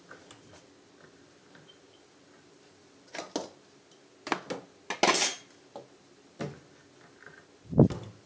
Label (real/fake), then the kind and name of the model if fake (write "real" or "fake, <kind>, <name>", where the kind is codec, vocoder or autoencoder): real